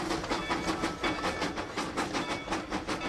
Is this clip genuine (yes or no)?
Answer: yes